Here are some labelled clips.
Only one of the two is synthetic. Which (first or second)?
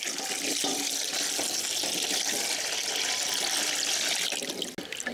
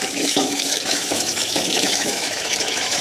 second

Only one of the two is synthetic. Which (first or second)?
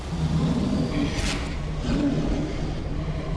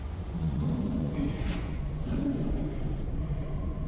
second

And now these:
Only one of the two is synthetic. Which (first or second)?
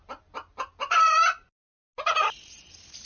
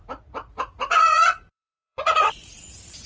second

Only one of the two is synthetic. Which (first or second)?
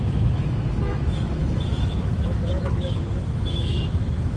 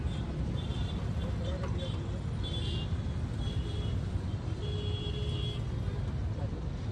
first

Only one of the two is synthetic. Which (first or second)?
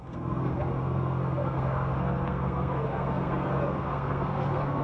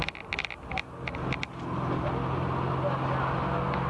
first